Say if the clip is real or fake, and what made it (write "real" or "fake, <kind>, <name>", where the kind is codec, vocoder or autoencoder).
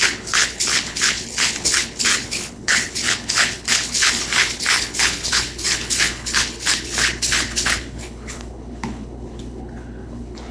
fake, codec, HILCodec